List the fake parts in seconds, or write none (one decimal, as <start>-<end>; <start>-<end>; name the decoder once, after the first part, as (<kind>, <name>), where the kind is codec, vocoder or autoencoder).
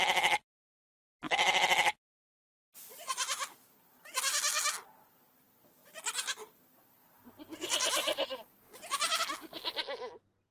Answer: none